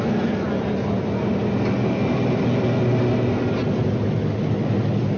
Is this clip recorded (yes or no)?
yes